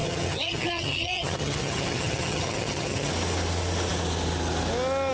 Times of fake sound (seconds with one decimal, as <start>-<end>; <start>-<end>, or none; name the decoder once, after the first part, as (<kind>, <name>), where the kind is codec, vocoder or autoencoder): 0.0-3.1 (vocoder, HiFi-GAN)